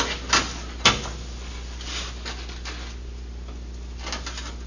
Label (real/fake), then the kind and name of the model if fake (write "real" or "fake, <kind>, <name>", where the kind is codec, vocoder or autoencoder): real